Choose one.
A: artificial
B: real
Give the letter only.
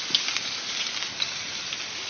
B